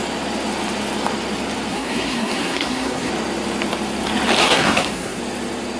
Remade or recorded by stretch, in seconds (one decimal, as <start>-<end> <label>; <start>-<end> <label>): 0.0-1.7 recorded; 1.7-3.1 remade; 3.1-4.4 recorded; 4.4-5.2 remade; 5.2-5.8 recorded